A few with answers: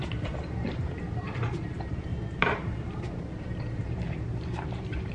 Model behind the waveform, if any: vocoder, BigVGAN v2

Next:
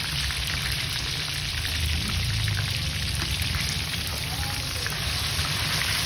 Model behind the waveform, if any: vocoder, BigVGAN v2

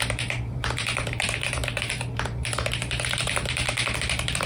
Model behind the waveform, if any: vocoder, BigVGAN v2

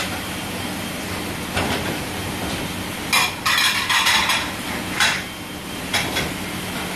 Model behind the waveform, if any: vocoder, BigVGAN v2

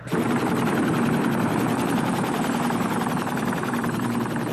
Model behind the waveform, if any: vocoder, BigVGAN v2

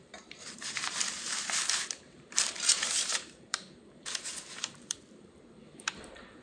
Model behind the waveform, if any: vocoder, BigVGAN v2